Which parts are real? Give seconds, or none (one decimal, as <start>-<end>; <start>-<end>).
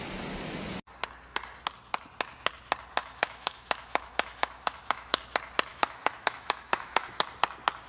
0.0-3.0; 5.2-5.7; 7.2-7.9